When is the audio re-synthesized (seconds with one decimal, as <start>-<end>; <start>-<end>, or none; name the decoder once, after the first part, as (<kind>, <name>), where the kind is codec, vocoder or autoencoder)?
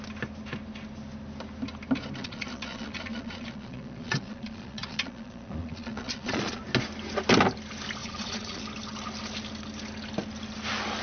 2.2-6.6 (vocoder, Vocos); 8.0-8.6